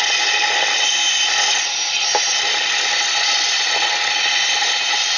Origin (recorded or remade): recorded